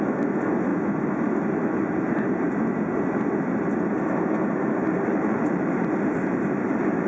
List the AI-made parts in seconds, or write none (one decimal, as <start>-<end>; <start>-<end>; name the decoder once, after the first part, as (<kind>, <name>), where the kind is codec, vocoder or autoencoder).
4.8-7.1 (vocoder, BigVGAN v2)